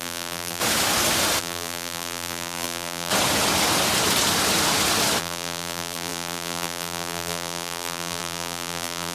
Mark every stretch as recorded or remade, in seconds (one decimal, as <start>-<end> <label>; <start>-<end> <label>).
0.0-0.6 remade; 0.6-1.4 recorded; 1.4-3.1 remade; 3.1-5.2 recorded; 5.2-9.1 remade